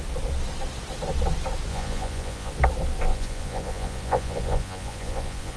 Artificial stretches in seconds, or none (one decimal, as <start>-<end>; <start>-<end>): 1.7-2.5; 3.1-5.6